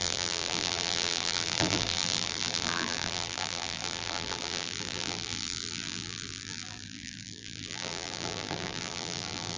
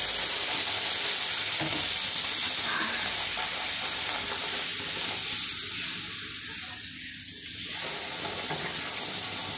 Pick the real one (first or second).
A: second